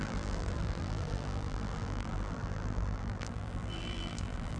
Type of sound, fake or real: fake